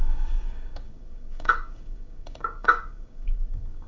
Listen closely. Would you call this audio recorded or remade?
remade